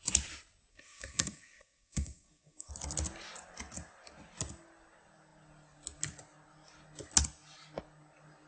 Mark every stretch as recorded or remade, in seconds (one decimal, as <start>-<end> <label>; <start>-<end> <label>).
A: 0.0-0.7 recorded; 0.7-2.7 remade; 2.7-8.5 recorded